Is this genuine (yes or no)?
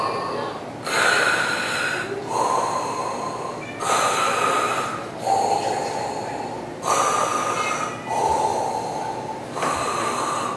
yes